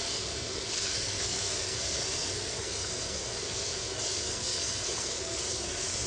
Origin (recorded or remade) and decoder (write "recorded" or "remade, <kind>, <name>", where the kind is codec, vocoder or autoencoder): remade, codec, SNAC